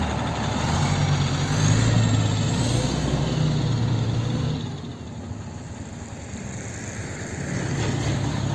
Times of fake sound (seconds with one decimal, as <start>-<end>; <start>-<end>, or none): none